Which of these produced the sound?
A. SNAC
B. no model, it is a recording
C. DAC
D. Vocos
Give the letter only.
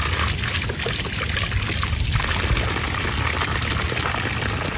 B